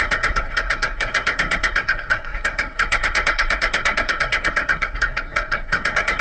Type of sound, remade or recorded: remade